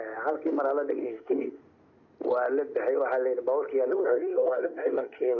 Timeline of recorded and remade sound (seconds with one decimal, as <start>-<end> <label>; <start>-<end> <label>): 0.0-1.0 recorded; 1.0-1.6 remade; 1.6-3.9 recorded; 3.9-5.4 remade